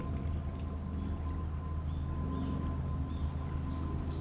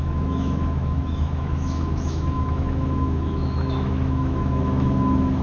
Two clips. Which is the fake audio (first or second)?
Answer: second